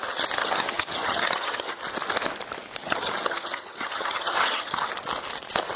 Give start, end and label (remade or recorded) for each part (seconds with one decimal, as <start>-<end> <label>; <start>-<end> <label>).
0.0-0.4 recorded; 0.4-1.8 remade; 1.8-2.8 recorded; 2.8-4.9 remade; 4.9-5.8 recorded